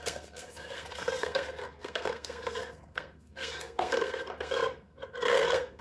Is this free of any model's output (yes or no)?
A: no